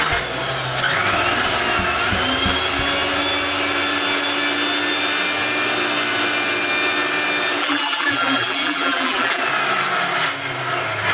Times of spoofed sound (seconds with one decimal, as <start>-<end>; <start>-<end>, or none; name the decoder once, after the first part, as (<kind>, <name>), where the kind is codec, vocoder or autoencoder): 7.6-9.4 (vocoder, BigVGAN v2)